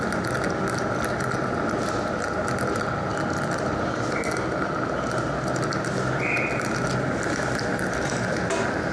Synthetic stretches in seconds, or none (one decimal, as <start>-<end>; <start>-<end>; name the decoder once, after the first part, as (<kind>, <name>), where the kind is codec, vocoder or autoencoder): none